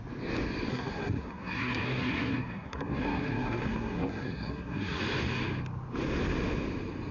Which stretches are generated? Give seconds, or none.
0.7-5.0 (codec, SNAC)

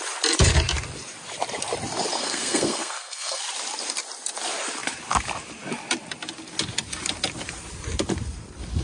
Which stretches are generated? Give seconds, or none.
2.1-3.4 (codec, SNAC)

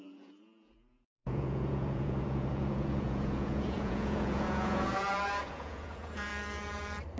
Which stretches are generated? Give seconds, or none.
0.0-6.3 (vocoder, Vocos)

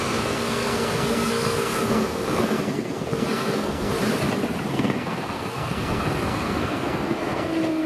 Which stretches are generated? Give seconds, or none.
0.0-3.9 (codec, SNAC); 4.7-7.9

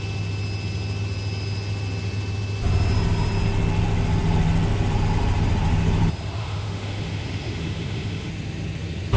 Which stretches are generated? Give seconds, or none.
6.4-8.3 (autoencoder, DAC-VAE)

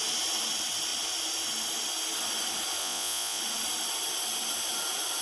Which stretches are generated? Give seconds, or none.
2.8-3.4 (vocoder, Vocos)